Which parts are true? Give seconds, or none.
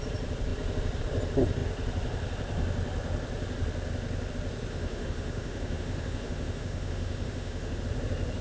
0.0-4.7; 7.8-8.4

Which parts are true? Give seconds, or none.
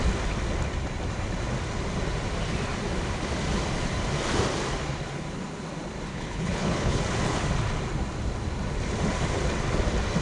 0.0-6.1; 7.0-10.2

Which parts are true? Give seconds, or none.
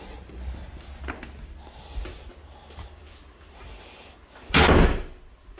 0.0-5.6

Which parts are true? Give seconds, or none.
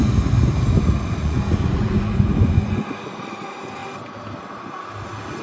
0.0-1.2; 2.8-5.4